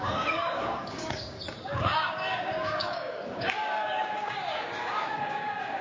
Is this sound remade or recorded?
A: remade